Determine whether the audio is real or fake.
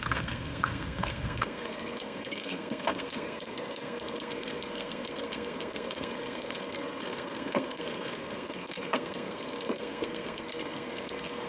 fake